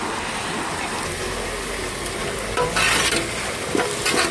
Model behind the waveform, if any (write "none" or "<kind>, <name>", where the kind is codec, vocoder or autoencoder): none